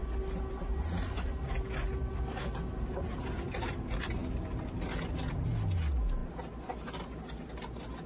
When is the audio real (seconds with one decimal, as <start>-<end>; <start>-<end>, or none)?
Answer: 0.0-8.1